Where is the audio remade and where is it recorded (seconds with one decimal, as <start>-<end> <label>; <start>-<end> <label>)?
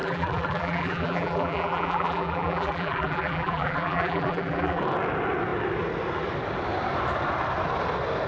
0.0-4.8 remade; 4.8-8.3 recorded